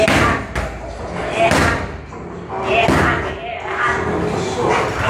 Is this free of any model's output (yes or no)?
yes